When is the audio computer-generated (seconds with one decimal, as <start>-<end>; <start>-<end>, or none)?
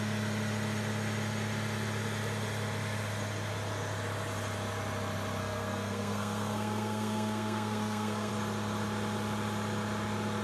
5.4-8.3